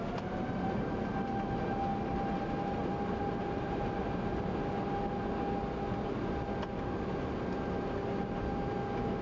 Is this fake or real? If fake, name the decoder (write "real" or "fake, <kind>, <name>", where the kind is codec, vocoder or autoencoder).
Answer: real